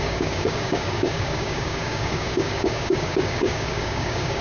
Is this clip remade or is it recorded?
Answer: remade